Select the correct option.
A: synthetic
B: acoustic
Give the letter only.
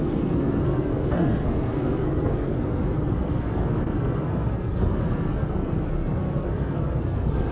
A